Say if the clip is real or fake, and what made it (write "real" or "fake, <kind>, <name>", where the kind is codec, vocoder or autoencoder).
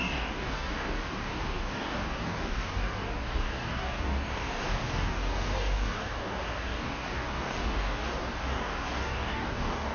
fake, codec, DAC